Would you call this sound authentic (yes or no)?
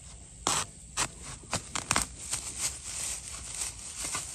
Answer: yes